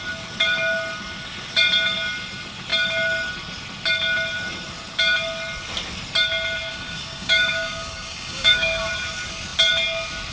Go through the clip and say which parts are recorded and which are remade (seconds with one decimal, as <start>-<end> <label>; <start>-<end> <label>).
0.0-6.7 recorded; 6.7-8.9 remade; 8.9-10.3 recorded